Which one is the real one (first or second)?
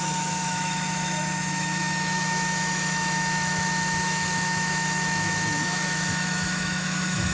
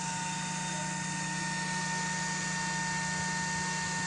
second